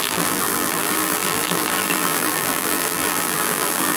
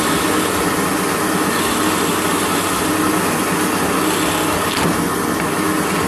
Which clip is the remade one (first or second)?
first